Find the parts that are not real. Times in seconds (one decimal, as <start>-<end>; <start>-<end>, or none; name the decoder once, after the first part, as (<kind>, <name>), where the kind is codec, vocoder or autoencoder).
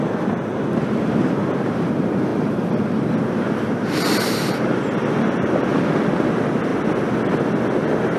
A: none